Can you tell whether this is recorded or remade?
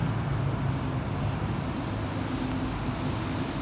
recorded